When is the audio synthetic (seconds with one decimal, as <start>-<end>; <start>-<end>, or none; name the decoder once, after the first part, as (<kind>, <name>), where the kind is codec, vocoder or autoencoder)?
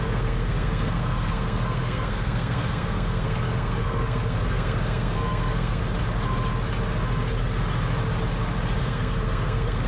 0.0-5.8 (codec, SNAC); 8.8-9.9